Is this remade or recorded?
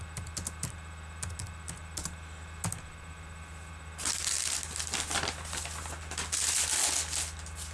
recorded